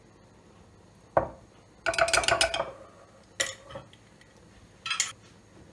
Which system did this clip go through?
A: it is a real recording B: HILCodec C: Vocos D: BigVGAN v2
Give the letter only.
A